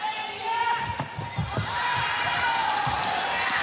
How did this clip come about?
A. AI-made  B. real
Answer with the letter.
B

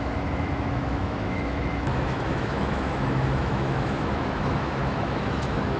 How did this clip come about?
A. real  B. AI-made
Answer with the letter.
B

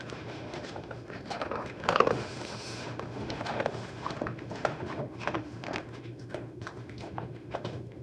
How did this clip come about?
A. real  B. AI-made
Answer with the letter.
B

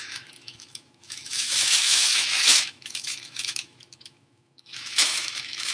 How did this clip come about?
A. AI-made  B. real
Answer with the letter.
A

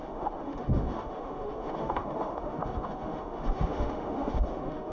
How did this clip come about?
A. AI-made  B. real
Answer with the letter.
A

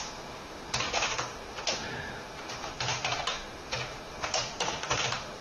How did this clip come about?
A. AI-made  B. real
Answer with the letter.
A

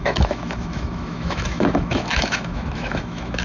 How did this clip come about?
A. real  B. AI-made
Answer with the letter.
B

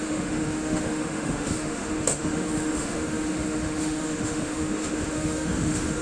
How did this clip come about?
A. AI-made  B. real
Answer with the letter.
A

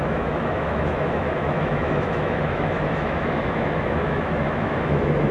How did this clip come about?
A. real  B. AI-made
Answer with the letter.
B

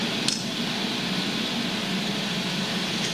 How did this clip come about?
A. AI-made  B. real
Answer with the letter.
B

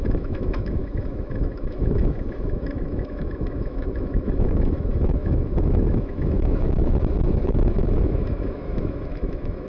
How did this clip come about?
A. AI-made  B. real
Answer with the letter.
A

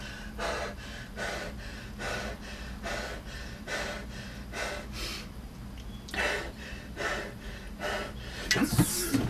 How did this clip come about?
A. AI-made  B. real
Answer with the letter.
B